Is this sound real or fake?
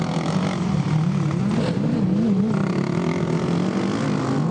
real